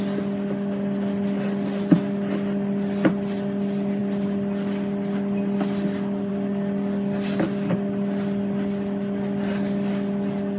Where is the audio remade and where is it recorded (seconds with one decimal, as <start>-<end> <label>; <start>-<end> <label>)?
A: 0.0-10.6 recorded